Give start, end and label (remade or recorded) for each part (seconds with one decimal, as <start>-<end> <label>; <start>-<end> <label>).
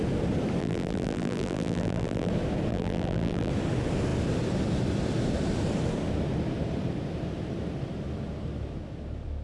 0.0-0.6 recorded; 0.6-2.3 remade; 2.3-2.7 recorded; 2.7-3.5 remade; 3.5-9.4 recorded